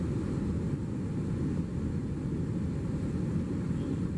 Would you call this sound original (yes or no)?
yes